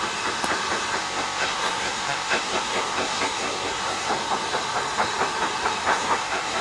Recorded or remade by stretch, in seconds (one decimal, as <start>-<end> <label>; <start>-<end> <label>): 0.0-1.0 recorded; 1.0-4.1 remade; 4.1-5.9 recorded; 5.9-6.6 remade